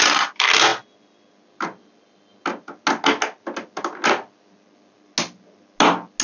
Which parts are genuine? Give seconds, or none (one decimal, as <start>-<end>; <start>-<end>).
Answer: 0.0-6.2